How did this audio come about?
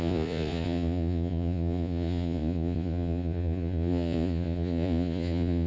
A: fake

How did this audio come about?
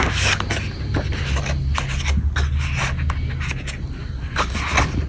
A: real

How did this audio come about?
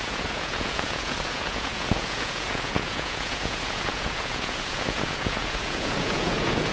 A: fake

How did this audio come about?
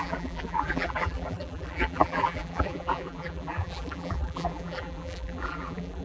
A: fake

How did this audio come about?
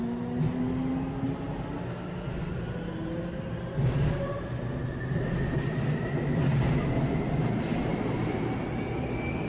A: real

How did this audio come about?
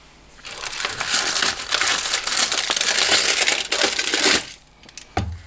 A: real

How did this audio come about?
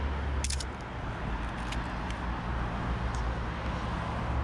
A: real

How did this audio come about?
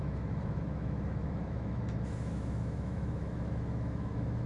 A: fake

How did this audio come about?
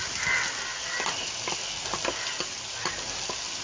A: real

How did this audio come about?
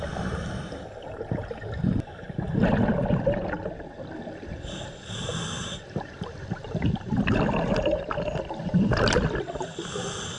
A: real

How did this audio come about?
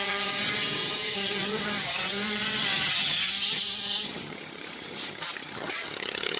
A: fake